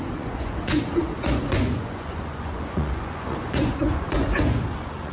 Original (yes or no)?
no